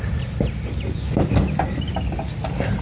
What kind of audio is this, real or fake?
real